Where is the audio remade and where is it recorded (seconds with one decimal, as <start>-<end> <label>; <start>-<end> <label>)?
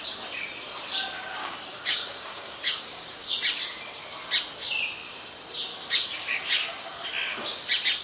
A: 0.0-1.4 recorded; 1.4-3.4 remade; 3.4-5.7 recorded; 5.7-6.4 remade; 6.4-8.0 recorded